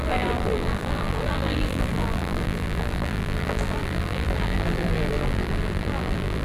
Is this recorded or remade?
remade